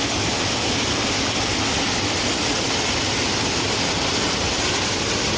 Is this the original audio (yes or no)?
yes